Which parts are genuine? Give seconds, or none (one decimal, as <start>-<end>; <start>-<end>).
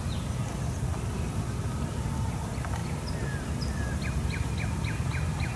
0.0-5.6